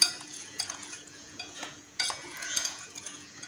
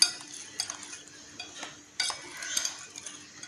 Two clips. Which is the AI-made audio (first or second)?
first